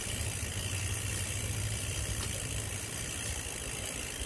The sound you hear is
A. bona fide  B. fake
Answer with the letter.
A